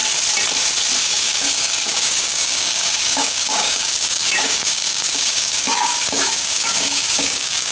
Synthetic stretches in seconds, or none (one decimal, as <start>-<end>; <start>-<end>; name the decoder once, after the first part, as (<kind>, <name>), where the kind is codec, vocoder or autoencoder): 1.0-7.7 (codec, DAC)